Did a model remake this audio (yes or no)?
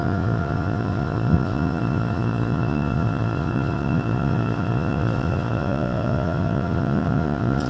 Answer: yes